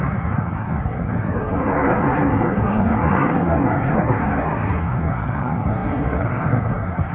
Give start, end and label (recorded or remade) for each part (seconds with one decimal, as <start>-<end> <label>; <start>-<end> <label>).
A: 0.0-7.1 remade